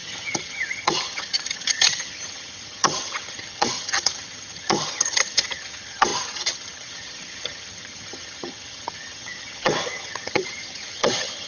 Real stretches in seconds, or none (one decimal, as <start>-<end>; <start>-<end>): none